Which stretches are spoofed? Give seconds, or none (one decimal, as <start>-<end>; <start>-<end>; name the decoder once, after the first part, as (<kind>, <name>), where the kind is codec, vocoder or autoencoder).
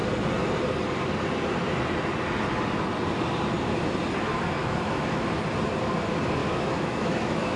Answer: 4.6-5.4 (autoencoder, DAC-VAE); 6.4-7.6